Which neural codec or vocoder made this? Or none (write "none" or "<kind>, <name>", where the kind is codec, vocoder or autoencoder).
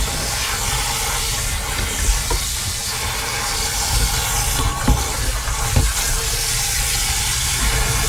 none